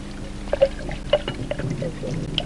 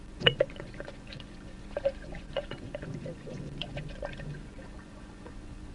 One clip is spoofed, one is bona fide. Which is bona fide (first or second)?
first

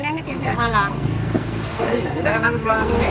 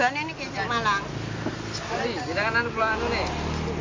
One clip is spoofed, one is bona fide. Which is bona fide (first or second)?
second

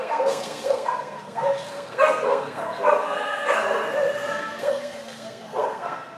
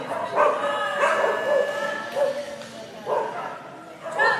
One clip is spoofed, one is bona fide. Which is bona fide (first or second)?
second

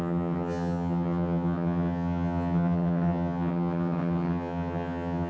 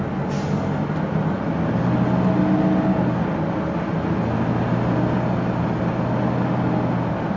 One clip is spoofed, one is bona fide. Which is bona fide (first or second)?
second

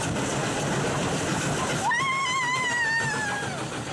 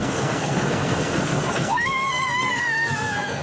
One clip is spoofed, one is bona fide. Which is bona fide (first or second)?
first